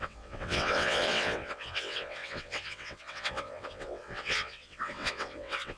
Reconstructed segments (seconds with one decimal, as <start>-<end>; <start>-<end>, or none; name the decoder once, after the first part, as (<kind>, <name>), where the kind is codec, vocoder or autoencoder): 0.0-5.8 (vocoder, WaveNeXt)